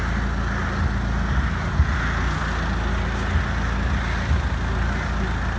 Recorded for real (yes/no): yes